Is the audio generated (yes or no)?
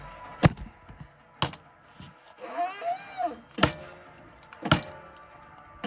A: no